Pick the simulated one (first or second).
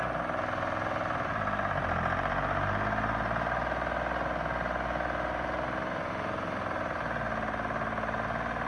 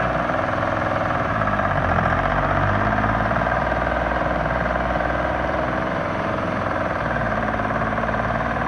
second